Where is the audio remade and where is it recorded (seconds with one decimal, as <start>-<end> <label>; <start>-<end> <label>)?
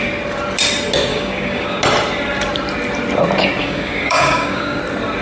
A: 0.0-1.1 recorded; 1.1-1.8 remade; 1.8-3.6 recorded; 3.6-4.8 remade; 4.8-5.2 recorded